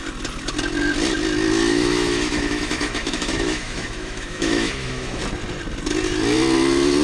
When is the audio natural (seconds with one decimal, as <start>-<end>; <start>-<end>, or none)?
0.0-1.7; 5.2-7.0